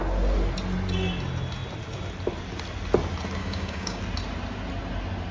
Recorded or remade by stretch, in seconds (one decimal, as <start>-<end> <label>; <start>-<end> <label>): 0.0-3.4 recorded; 3.4-4.0 remade; 4.0-5.3 recorded

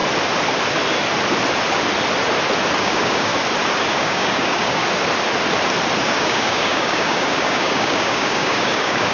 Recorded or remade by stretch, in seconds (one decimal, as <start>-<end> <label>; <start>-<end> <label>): 0.0-2.8 recorded; 2.8-3.3 remade; 3.3-3.9 recorded; 3.9-4.8 remade; 4.8-6.0 recorded; 6.0-9.1 remade

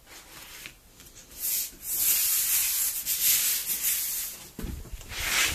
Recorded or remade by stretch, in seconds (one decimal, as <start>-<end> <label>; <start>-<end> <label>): 0.0-5.5 recorded

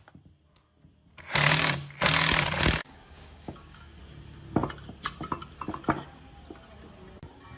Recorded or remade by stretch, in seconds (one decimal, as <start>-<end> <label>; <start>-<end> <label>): 0.0-2.8 recorded; 2.8-4.0 remade; 4.0-7.6 recorded

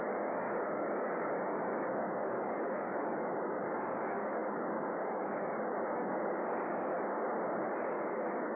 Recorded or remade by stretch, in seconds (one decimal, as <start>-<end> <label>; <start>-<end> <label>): 0.0-6.9 remade; 6.9-7.8 recorded; 7.8-8.6 remade

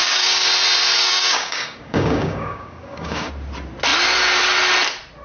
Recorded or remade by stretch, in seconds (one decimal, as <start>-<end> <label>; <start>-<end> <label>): 0.0-0.5 remade; 0.5-1.0 recorded; 1.0-3.3 remade; 3.3-5.2 recorded

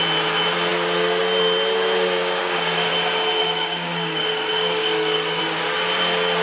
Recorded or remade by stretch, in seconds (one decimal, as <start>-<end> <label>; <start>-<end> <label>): 0.0-2.4 recorded; 2.4-2.9 remade; 2.9-3.4 recorded; 3.4-5.4 remade; 5.4-6.4 recorded